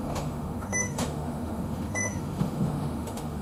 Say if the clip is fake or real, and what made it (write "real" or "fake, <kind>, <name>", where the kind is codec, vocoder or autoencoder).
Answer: fake, autoencoder, DAC-VAE